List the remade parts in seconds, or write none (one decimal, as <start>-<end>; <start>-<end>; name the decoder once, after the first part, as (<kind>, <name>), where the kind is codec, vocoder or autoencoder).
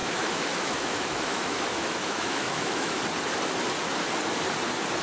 0.0-3.0 (autoencoder, DAC-VAE)